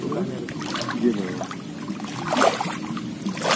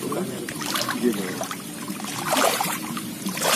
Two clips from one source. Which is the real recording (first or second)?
first